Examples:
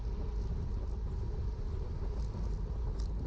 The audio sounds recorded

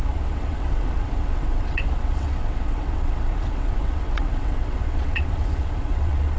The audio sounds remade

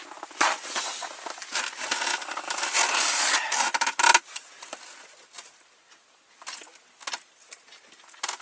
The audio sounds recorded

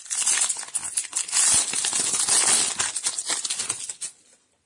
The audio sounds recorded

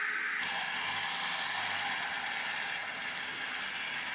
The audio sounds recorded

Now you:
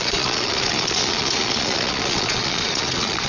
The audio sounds remade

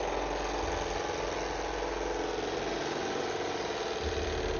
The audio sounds recorded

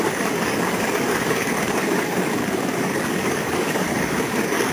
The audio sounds remade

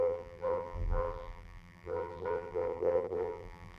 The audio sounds remade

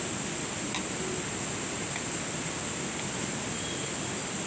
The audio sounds remade